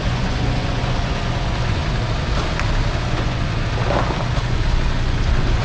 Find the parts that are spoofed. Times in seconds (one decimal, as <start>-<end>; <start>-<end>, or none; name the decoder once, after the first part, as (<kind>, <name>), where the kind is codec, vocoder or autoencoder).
0.0-1.8 (vocoder, Vocos); 3.0-3.6; 4.4-5.6